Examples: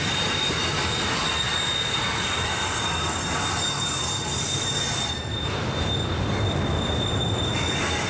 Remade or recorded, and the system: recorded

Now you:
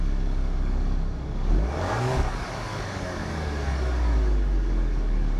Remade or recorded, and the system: remade, codec, DAC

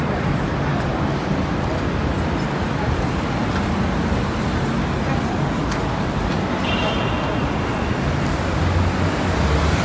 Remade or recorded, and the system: recorded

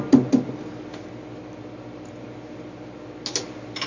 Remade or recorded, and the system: recorded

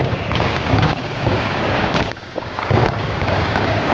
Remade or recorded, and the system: remade, codec, DAC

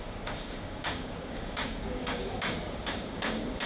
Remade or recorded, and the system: remade, codec, DAC